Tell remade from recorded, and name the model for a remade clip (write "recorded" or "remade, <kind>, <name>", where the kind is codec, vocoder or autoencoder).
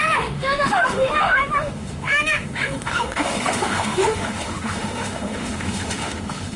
remade, autoencoder, DAC-VAE